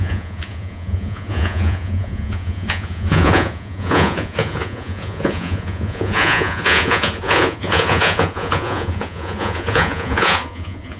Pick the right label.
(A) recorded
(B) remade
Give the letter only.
B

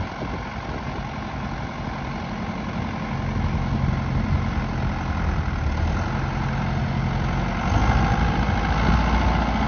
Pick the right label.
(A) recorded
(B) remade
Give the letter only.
A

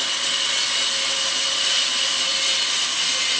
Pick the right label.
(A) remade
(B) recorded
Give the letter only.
B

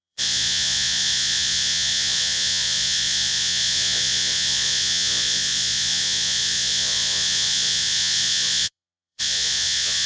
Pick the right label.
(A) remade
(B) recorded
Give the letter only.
A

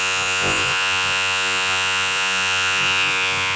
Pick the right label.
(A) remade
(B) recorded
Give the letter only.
A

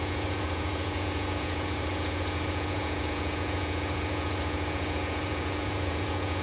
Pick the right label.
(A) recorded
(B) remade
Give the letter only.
B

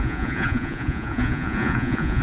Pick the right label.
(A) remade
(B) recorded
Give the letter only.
A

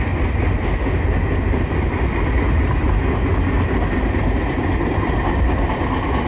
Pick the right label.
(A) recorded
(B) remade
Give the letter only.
A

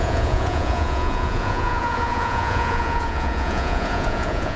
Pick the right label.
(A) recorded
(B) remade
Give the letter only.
B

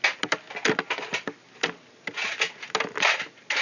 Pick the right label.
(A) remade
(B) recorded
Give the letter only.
B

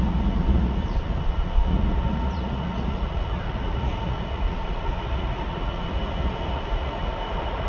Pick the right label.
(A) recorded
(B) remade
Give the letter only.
B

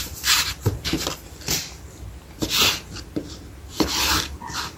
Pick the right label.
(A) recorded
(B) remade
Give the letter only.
A